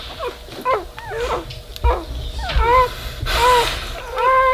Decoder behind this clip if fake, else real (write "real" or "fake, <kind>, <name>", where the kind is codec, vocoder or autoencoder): real